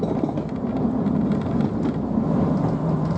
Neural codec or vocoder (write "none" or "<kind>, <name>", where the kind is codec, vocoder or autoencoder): none